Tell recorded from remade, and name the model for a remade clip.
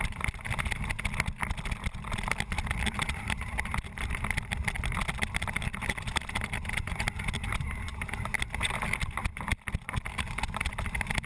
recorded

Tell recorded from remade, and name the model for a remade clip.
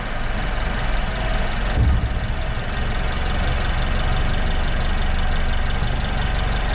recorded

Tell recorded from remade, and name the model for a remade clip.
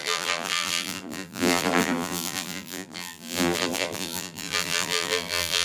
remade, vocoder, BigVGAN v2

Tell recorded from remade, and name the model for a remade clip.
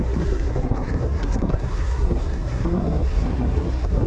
remade, codec, SNAC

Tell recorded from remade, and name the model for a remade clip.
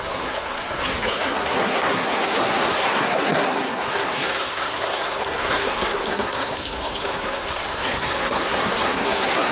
remade, codec, SNAC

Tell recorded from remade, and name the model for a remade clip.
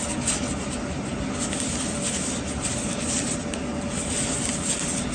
recorded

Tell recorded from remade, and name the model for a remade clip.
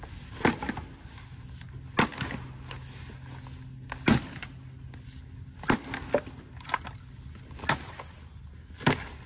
recorded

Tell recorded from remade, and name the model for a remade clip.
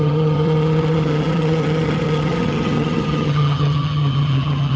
remade, vocoder, HiFi-GAN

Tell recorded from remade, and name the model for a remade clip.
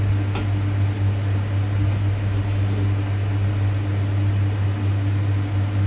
recorded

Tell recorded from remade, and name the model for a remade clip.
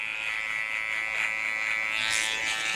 recorded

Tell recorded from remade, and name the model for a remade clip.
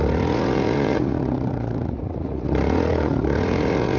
remade, vocoder, Vocos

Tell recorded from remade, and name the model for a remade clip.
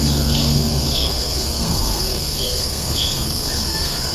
remade, codec, SNAC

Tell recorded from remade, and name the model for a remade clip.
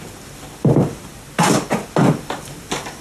recorded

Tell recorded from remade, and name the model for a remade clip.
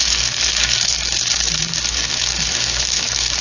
remade, autoencoder, DAC-VAE